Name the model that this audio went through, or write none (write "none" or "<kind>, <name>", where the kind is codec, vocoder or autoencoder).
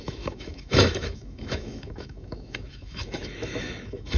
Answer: autoencoder, DAC-VAE